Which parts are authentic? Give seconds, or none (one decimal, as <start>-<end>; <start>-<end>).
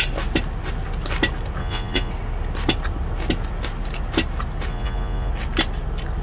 0.0-1.6; 2.1-4.7; 5.3-6.2